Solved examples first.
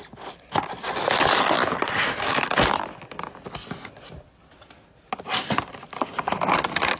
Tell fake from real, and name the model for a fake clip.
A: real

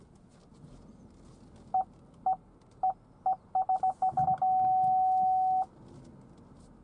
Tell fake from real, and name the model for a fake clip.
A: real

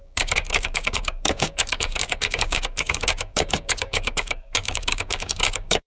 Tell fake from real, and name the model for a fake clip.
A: fake, codec, DAC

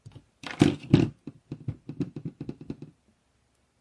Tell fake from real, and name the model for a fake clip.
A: real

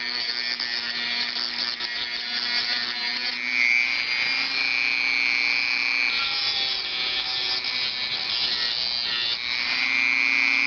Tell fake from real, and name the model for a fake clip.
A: real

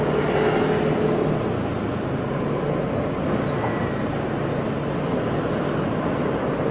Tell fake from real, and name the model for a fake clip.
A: real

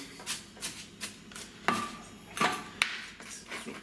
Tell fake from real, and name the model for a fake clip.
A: real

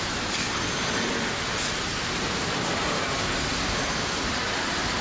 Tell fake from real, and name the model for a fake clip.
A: real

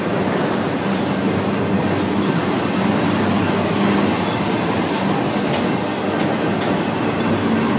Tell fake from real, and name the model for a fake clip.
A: real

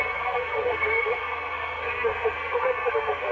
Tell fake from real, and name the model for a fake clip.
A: fake, codec, SNAC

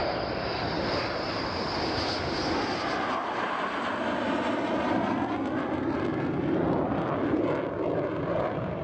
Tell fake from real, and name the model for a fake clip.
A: real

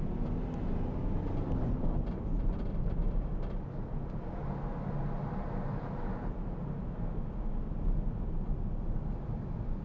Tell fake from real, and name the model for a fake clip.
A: real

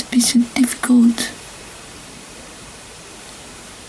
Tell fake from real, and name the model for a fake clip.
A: fake, vocoder, BigVGAN v2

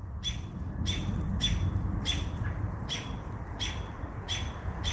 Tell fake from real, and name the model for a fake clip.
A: fake, vocoder, BigVGAN v2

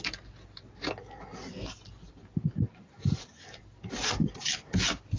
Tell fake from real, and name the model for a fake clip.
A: real